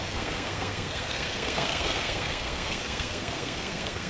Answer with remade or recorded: remade